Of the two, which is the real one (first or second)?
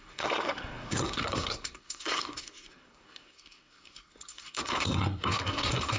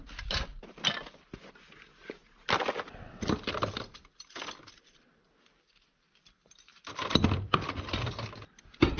second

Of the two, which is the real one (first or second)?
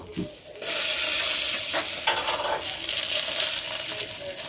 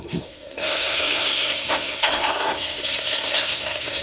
first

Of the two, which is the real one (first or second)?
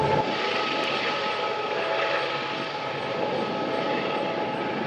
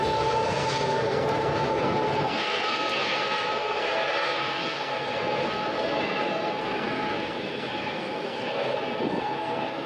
first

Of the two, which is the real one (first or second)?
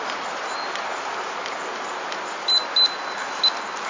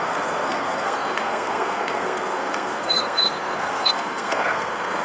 first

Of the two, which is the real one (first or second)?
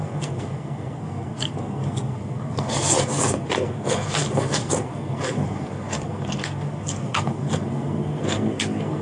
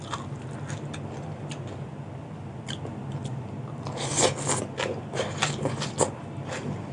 second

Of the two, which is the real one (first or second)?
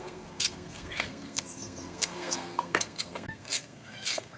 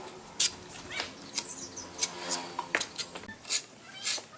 second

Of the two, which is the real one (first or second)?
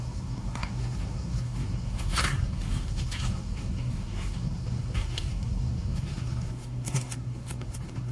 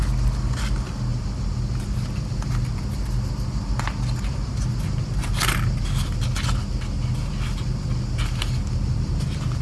second